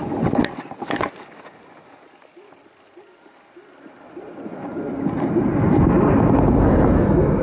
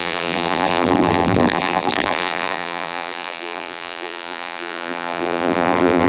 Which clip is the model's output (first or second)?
second